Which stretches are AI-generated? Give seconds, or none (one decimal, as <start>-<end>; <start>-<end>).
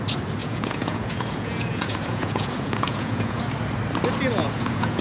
0.4-3.4; 4.4-5.0